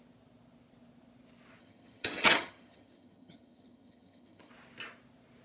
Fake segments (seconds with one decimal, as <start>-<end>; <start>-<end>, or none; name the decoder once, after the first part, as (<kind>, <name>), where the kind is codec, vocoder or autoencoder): 1.6-4.5 (vocoder, HiFi-GAN)